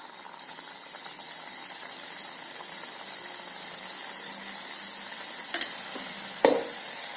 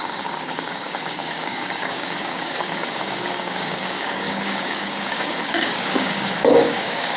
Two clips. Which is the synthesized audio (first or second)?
second